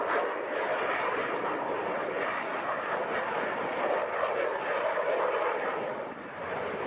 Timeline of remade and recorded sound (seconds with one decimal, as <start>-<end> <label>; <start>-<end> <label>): 0.0-6.9 recorded

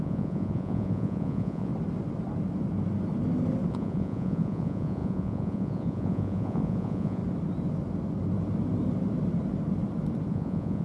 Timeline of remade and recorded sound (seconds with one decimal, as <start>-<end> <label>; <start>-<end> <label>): 0.0-1.7 remade; 1.7-3.7 recorded; 3.7-7.2 remade; 7.2-10.3 recorded; 10.3-10.8 remade

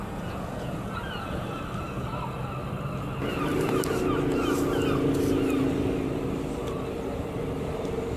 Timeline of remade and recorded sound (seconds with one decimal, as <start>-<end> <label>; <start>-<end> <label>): 0.0-1.6 remade; 1.6-8.2 recorded

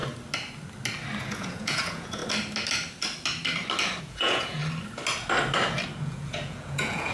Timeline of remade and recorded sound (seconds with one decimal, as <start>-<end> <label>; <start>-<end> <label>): 0.0-1.3 recorded; 1.3-2.2 remade; 2.2-4.0 recorded; 4.0-4.6 remade; 4.6-6.0 recorded; 6.0-7.1 remade

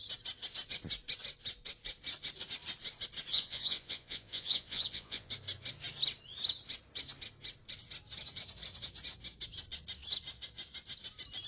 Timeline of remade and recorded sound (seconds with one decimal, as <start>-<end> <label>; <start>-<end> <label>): 0.0-3.3 recorded; 3.3-5.3 remade; 5.3-11.5 recorded

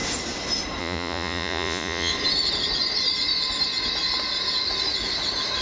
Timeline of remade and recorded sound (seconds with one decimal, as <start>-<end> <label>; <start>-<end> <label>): 0.0-0.8 recorded; 0.8-2.1 remade; 2.1-5.6 recorded